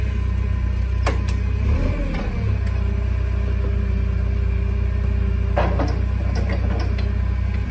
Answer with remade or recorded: recorded